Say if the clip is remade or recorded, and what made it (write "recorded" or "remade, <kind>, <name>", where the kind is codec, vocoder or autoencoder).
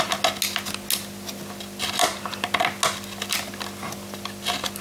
recorded